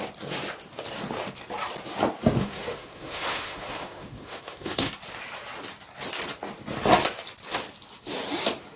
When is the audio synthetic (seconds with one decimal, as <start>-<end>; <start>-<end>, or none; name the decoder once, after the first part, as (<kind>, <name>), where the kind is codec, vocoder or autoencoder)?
2.4-4.9 (autoencoder, DAC-VAE)